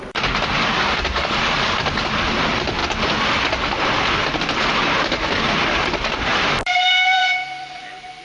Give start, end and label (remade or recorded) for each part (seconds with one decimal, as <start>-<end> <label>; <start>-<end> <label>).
0.0-2.8 remade; 2.8-4.4 recorded; 4.4-8.2 remade